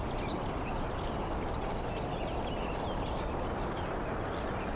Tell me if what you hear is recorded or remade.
recorded